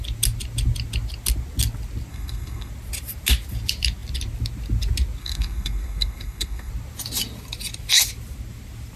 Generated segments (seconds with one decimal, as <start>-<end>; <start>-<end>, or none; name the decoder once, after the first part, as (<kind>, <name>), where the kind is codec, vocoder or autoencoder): 2.1-2.7 (codec, SNAC); 5.2-6.7